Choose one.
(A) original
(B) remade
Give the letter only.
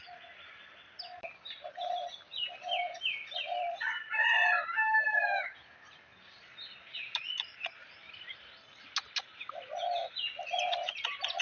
A